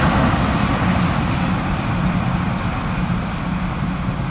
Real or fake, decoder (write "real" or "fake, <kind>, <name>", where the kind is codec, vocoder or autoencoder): real